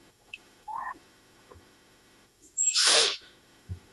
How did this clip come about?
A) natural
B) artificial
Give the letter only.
B